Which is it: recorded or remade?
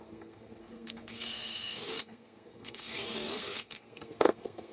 remade